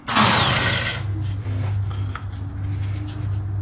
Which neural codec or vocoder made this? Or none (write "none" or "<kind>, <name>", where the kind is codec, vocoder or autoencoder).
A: none